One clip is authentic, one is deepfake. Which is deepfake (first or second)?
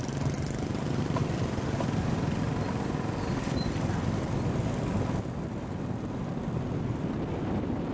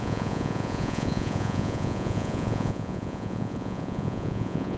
second